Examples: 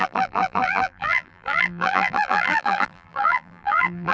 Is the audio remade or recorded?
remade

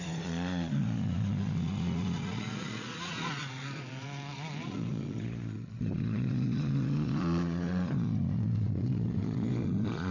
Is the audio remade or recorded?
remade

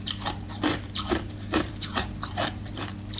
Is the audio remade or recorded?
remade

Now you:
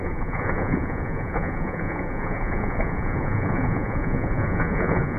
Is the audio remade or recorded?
remade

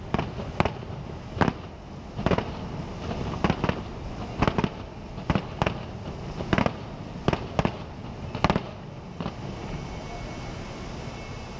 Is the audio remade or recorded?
recorded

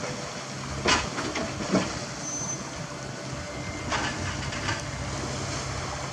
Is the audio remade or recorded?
recorded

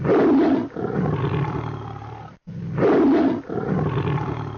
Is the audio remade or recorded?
recorded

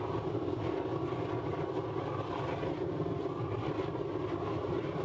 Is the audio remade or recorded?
recorded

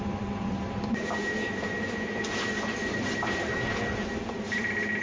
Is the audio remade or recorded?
remade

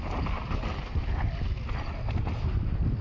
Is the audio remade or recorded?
recorded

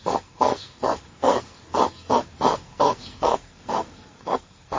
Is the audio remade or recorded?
remade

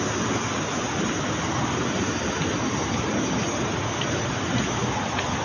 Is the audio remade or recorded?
recorded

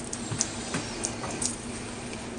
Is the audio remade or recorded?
recorded